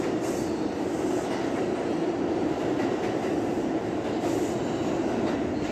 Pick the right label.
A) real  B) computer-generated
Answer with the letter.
A